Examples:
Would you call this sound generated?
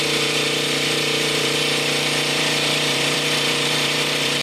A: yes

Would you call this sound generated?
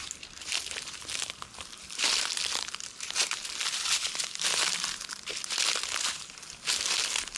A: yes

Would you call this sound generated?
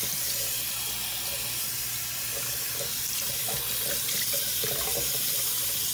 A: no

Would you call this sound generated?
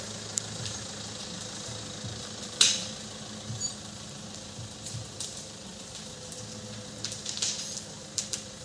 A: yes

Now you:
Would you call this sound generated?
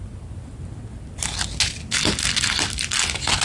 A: no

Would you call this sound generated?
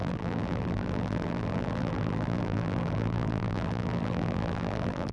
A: yes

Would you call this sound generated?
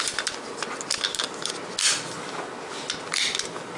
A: no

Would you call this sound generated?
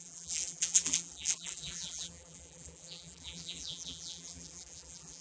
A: yes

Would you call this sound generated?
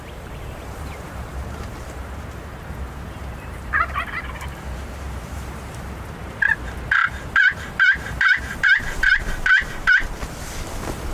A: yes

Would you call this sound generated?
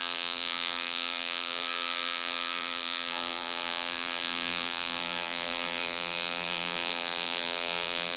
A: yes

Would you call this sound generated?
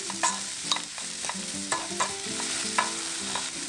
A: yes